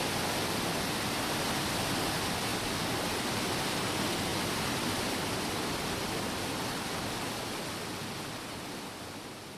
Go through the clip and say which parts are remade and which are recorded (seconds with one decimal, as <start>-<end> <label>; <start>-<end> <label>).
0.0-9.6 recorded